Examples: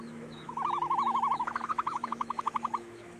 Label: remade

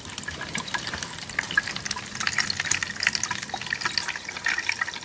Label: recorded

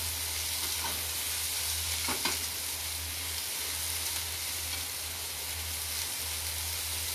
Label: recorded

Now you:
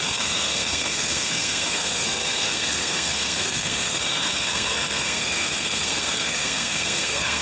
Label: remade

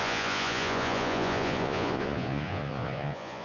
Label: remade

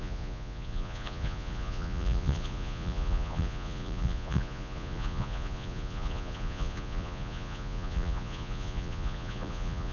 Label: remade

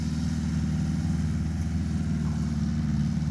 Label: recorded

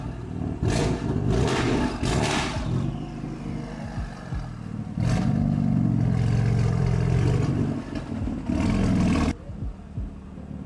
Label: recorded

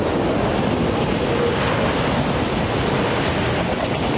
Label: recorded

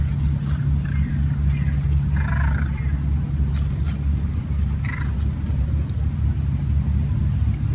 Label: recorded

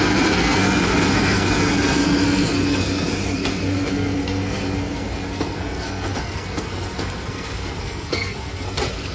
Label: remade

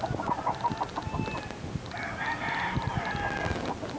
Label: recorded